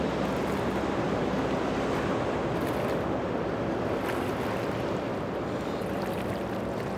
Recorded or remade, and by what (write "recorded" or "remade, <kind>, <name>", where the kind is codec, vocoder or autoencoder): recorded